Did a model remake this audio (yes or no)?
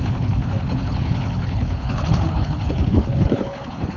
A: yes